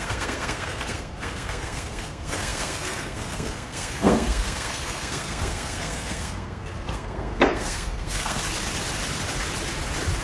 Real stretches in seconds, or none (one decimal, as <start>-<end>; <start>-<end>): 8.4-10.2